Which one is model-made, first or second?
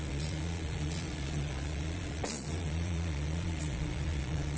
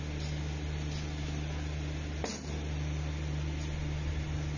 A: first